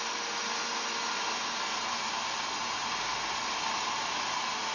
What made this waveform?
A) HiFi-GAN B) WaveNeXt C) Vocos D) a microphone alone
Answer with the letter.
D